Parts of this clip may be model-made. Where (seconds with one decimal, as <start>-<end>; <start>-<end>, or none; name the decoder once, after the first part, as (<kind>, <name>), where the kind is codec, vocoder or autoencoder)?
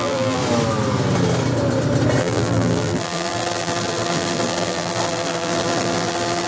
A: 0.0-0.4 (vocoder, BigVGAN v2); 2.2-6.5